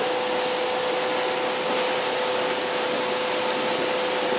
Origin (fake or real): real